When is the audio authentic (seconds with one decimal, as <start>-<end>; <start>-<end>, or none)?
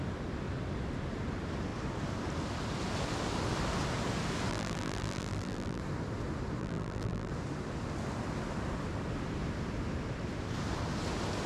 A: 0.0-4.5; 5.8-6.6; 7.3-11.5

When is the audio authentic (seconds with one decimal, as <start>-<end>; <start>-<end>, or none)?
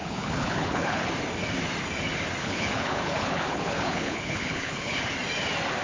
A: 1.1-2.4; 5.0-5.8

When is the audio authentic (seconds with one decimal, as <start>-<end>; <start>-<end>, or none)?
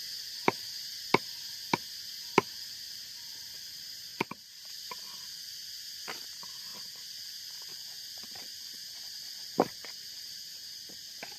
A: 0.0-4.1; 4.7-8.5; 10.5-11.4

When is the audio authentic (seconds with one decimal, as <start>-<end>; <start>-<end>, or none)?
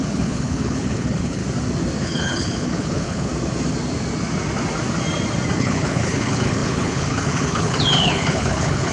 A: 1.4-2.0; 3.3-5.6